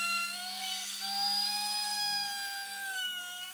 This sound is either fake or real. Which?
fake